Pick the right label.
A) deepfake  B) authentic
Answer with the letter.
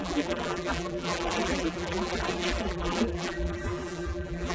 A